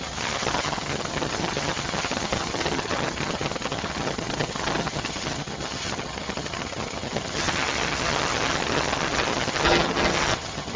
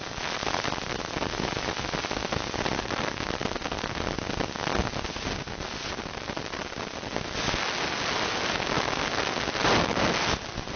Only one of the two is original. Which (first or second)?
second